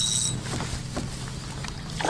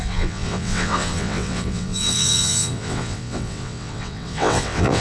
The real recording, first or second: first